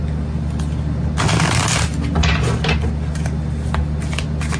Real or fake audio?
real